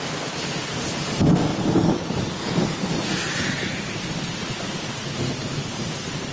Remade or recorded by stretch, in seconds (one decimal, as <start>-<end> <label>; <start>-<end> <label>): 0.0-6.3 recorded